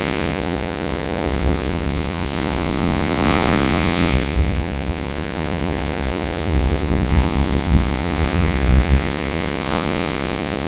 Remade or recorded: remade